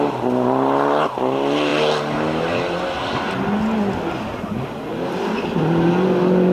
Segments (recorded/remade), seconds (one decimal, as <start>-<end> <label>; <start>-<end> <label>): 0.0-6.5 recorded